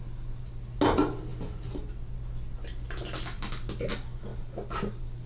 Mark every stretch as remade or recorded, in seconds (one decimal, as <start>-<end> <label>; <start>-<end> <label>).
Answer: 0.0-4.3 recorded; 4.3-5.3 remade